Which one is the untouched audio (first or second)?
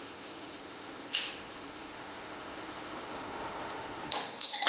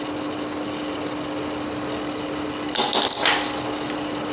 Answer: second